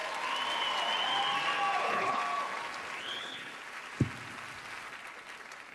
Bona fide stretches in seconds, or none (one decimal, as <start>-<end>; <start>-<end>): 0.0-1.8; 2.2-3.0; 3.5-5.7